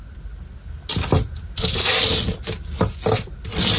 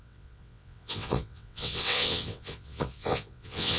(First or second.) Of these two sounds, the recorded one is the first